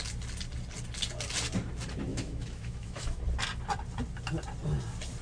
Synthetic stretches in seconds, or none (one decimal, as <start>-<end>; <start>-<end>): 2.1-3.2